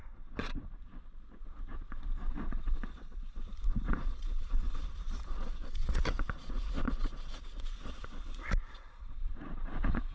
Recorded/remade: remade